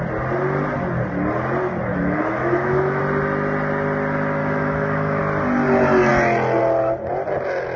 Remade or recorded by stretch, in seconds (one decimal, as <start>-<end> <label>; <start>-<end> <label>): 0.0-1.9 recorded; 1.9-3.0 remade; 3.0-4.4 recorded; 4.4-5.2 remade; 5.2-7.8 recorded